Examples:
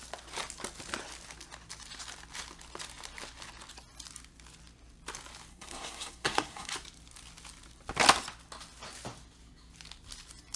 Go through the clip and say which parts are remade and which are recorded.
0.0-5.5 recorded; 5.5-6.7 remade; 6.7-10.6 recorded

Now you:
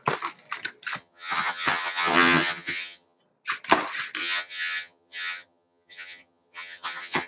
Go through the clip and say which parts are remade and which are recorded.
0.0-1.0 recorded; 1.0-3.2 remade; 3.2-4.2 recorded; 4.2-7.3 remade